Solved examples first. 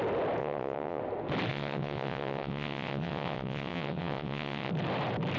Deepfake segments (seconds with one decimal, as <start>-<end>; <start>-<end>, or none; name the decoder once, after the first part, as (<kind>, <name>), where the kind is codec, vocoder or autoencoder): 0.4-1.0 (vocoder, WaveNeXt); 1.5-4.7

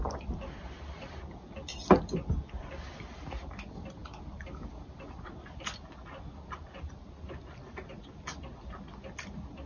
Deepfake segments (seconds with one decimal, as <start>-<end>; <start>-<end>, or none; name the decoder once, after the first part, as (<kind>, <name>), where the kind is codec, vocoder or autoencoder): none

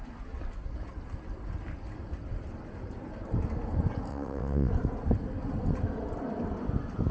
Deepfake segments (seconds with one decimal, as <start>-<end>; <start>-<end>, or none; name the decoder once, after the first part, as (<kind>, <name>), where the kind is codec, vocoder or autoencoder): 4.1-4.7 (vocoder, WaveNeXt)

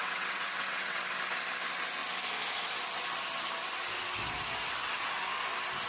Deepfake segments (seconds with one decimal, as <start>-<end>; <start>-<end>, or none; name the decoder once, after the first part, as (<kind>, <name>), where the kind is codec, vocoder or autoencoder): 0.0-1.0 (vocoder, WaveNeXt)